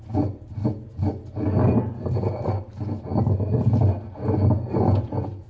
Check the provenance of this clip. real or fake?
real